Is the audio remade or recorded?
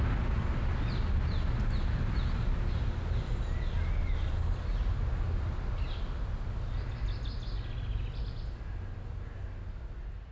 recorded